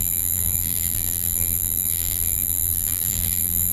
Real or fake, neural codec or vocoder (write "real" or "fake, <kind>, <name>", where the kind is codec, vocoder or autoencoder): fake, vocoder, BigVGAN v2